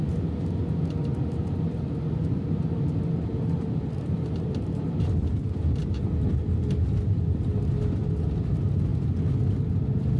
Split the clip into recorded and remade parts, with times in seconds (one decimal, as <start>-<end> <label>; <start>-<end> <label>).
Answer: 0.0-10.2 recorded

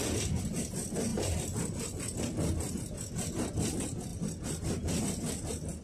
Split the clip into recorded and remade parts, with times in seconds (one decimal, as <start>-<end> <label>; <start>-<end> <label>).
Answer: 0.0-1.1 recorded; 1.1-2.7 remade; 2.7-5.8 recorded

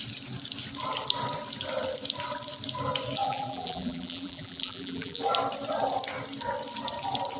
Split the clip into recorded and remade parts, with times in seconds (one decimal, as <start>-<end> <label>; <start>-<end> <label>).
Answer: 0.0-3.2 recorded; 3.2-5.2 remade; 5.2-7.4 recorded

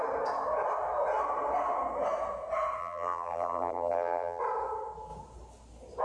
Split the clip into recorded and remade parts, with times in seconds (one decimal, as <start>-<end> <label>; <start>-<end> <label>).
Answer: 0.0-2.8 recorded; 2.8-4.4 remade; 4.4-6.0 recorded